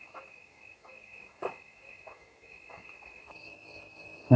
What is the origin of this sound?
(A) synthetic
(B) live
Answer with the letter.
A